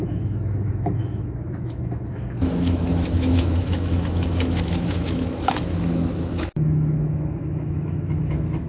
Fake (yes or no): yes